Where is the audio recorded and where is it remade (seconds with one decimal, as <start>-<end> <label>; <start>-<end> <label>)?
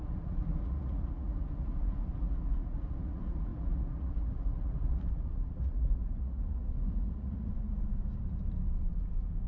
0.0-7.5 remade; 7.5-9.5 recorded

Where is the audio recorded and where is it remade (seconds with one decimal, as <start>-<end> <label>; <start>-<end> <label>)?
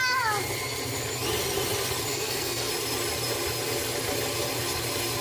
0.0-2.1 recorded; 2.1-2.7 remade; 2.7-5.2 recorded